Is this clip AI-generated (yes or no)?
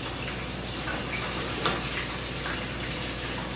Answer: no